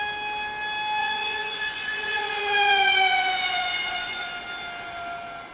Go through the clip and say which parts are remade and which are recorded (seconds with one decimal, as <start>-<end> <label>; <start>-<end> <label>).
0.0-1.0 recorded; 1.0-4.3 remade; 4.3-5.5 recorded